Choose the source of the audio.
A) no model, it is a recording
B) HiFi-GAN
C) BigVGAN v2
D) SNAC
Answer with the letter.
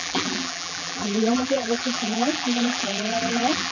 C